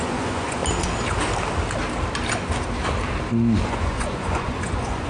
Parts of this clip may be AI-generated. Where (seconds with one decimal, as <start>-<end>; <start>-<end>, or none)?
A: 0.0-0.6; 3.7-5.1

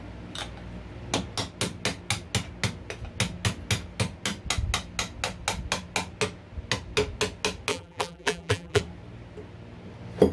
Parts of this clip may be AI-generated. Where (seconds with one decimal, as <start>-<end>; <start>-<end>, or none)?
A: 7.7-8.8

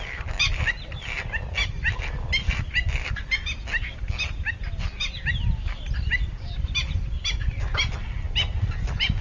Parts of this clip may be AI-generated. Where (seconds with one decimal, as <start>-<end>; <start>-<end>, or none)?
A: none

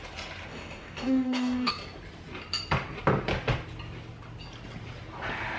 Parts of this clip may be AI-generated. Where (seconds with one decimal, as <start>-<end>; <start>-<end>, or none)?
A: 0.5-1.7

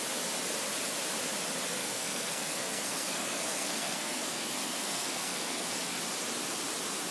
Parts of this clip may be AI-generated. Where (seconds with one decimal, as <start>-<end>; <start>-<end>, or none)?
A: 1.8-6.0

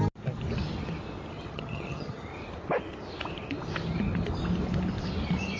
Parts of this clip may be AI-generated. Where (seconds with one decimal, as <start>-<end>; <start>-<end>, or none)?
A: 1.5-2.3

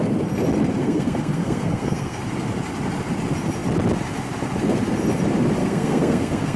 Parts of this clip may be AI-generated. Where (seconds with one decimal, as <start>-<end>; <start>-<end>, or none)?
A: 0.8-2.2; 5.6-6.6